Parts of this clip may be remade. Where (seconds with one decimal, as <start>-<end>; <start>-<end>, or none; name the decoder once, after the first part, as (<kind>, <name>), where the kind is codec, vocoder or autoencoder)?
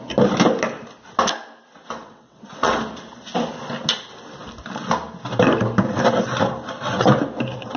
2.0-2.8 (vocoder, WaveNeXt)